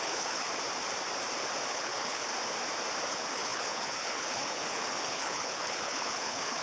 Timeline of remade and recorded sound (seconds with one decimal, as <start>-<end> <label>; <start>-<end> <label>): 0.0-0.5 remade; 0.5-1.7 recorded; 1.7-2.3 remade; 2.3-3.1 recorded; 3.1-6.6 remade